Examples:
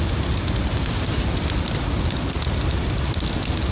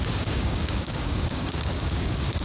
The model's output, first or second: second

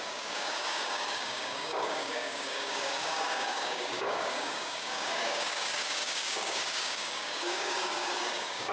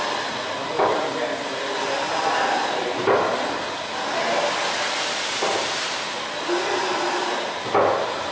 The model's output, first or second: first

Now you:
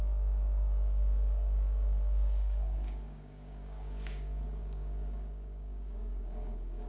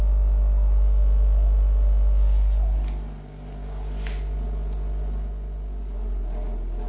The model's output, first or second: first